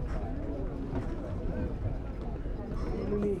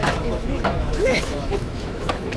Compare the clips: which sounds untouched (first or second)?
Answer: first